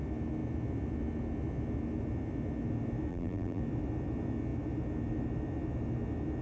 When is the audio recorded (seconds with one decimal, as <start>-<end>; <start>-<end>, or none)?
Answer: 0.0-3.1; 3.6-6.4